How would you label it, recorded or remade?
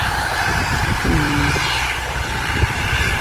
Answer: remade